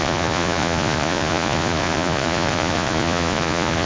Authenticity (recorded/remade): remade